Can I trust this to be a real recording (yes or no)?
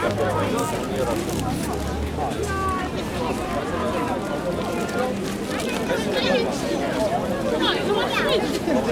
yes